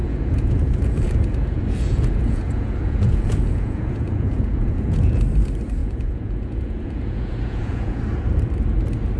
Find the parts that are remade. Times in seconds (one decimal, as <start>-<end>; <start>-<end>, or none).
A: 0.0-5.2; 5.8-8.0